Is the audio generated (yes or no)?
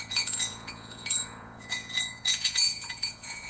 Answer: yes